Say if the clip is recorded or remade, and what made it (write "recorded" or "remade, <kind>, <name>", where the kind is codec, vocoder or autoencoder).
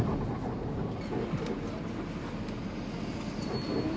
recorded